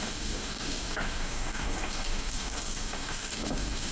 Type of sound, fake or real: fake